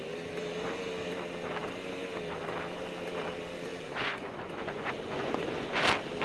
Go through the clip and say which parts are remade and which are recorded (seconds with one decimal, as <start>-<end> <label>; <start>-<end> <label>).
0.0-3.7 recorded; 3.7-5.8 remade; 5.8-6.2 recorded